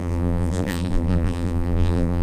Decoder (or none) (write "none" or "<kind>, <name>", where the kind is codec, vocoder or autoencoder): vocoder, BigVGAN v2